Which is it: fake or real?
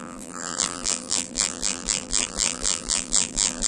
fake